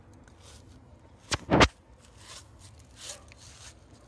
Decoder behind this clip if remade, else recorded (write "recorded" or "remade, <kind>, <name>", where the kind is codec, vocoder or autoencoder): recorded